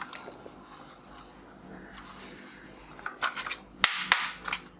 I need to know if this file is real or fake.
real